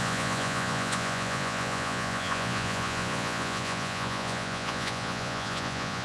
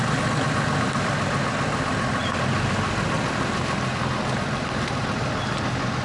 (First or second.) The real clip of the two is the second